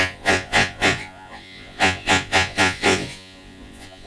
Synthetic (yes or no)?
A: yes